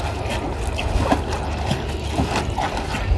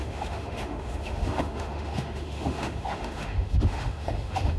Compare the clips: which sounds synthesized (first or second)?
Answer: second